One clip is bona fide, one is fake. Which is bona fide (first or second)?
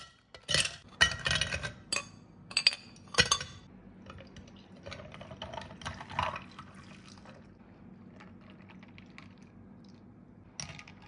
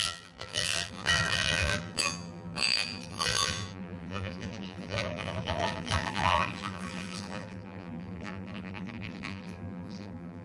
first